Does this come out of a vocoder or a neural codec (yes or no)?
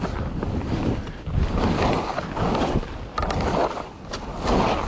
no